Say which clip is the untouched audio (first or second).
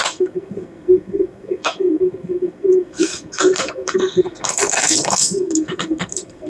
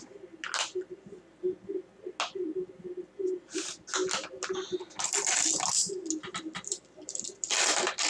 second